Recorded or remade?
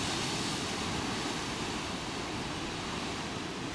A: remade